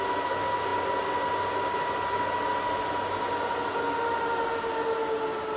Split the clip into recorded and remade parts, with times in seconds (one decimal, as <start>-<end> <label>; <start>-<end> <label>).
0.0-5.6 recorded